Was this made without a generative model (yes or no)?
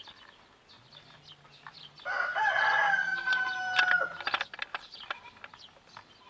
yes